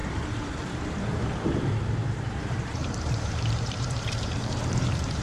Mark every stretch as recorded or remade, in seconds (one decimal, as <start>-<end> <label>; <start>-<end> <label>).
0.0-5.2 remade